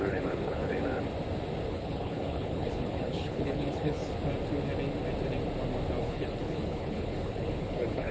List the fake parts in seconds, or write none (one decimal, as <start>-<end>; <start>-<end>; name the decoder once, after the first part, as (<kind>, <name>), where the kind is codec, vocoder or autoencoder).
0.0-0.7 (codec, HILCodec); 1.7-4.0; 6.0-8.1